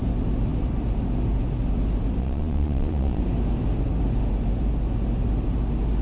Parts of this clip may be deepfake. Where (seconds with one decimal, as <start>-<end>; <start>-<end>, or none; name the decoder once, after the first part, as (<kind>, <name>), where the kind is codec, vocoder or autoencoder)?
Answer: 2.2-3.2 (vocoder, Vocos)